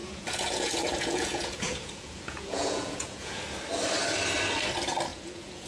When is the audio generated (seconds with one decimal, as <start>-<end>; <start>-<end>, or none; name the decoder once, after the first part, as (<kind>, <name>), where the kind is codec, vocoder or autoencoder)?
0.0-3.4 (vocoder, Vocos); 5.1-5.7